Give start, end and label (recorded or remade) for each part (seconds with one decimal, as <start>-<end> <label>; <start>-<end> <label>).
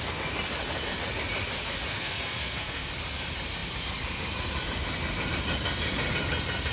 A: 0.0-1.9 recorded; 1.9-2.9 remade; 2.9-6.7 recorded